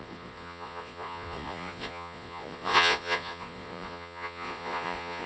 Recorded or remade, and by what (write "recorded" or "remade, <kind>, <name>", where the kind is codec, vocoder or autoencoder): remade, vocoder, Vocos